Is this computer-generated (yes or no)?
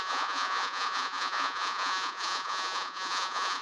yes